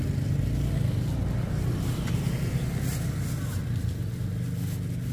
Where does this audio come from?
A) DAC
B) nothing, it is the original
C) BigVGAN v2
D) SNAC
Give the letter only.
B